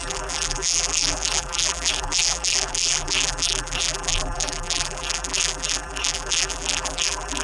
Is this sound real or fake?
fake